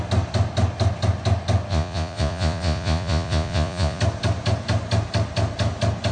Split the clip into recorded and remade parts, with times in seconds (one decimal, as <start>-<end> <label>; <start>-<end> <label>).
0.0-1.7 recorded; 1.7-4.0 remade; 4.0-6.1 recorded